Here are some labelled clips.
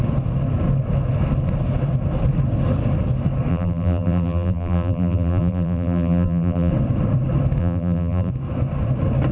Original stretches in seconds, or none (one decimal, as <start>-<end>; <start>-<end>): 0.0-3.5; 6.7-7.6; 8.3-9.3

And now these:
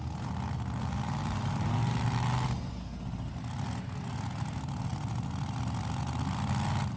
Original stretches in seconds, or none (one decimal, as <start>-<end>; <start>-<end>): 0.0-7.0

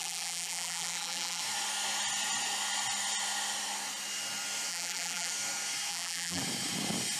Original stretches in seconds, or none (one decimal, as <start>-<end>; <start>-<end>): 1.4-4.7; 5.3-5.9; 6.4-7.2

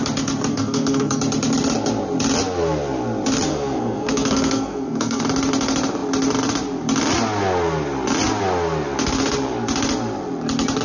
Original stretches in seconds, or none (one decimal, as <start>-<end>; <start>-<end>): 0.0-0.5; 1.2-3.5; 5.2-10.8

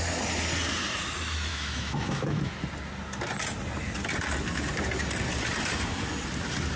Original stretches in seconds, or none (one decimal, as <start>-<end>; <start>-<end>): 0.0-1.5; 2.5-6.8

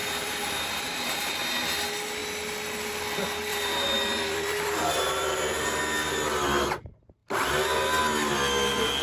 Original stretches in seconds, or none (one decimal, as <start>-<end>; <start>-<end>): 1.3-3.5; 5.8-9.0